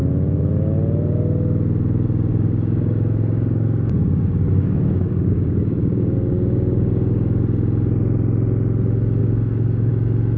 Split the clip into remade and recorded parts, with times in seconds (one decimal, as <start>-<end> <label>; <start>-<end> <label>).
0.0-2.3 recorded; 2.3-7.4 remade; 7.4-9.2 recorded; 9.2-9.9 remade; 9.9-10.4 recorded